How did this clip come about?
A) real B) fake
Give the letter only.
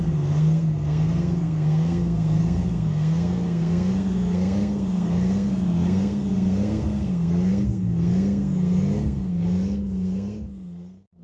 B